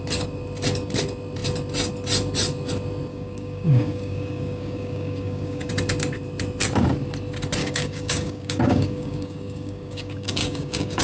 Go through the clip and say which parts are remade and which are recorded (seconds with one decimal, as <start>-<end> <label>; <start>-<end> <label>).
0.0-3.1 recorded; 3.1-5.7 remade; 5.7-7.6 recorded; 7.6-11.0 remade